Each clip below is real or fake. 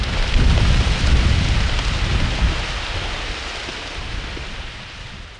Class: real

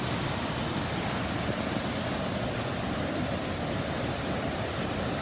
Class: real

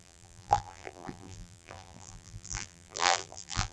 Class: fake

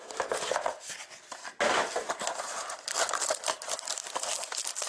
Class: real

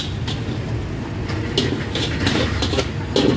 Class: real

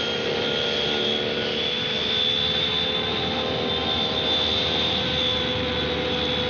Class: real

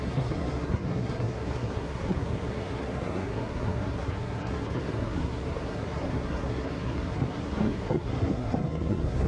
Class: fake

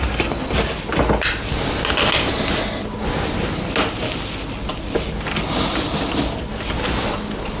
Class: real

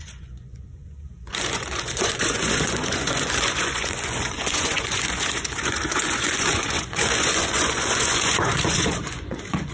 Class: fake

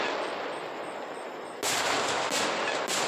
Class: real